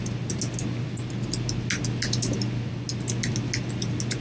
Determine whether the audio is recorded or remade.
recorded